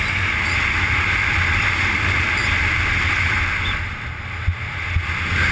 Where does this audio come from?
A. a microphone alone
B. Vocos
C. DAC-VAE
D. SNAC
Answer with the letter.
A